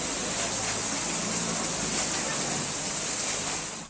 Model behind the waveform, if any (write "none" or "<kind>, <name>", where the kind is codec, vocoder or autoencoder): none